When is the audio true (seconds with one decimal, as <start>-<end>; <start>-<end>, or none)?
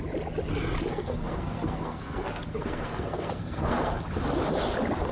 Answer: 0.0-0.9; 4.0-5.1